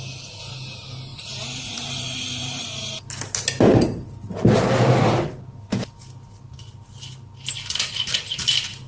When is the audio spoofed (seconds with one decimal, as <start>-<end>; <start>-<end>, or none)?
1.1-2.6

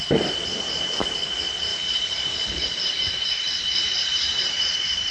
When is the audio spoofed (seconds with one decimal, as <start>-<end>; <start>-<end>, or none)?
1.7-5.1

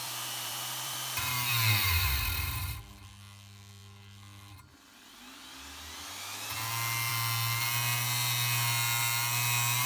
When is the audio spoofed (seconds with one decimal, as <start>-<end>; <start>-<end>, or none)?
0.0-2.2

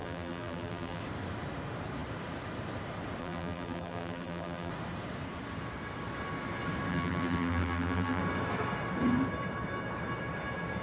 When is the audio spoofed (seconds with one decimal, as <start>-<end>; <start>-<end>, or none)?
0.0-1.0; 3.2-4.7; 6.9-8.2